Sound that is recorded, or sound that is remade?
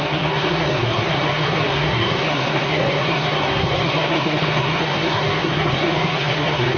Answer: remade